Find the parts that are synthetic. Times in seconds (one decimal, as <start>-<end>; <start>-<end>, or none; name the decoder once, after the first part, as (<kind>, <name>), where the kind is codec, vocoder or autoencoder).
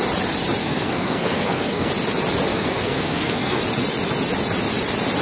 0.6-1.9 (codec, SNAC); 2.5-3.6